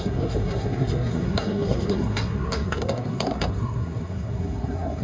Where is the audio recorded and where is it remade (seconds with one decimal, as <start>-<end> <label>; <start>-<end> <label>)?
0.0-5.0 remade

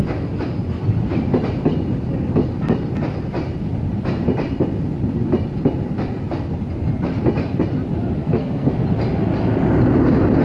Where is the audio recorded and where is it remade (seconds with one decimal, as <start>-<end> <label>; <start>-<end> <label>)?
0.0-8.2 recorded; 8.2-8.7 remade; 8.7-10.4 recorded

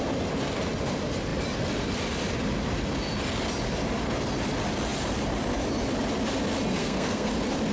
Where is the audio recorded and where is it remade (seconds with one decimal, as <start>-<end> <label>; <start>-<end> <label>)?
0.0-6.8 recorded; 6.8-7.3 remade; 7.3-7.7 recorded

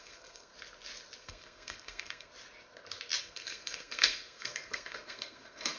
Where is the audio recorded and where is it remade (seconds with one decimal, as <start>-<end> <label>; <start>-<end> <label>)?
0.0-0.5 remade; 0.5-1.2 recorded; 1.2-2.3 remade; 2.3-3.2 recorded; 3.2-5.8 remade